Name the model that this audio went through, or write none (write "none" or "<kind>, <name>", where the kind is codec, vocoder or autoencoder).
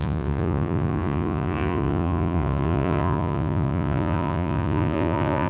vocoder, Vocos